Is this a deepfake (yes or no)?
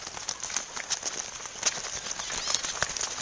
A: no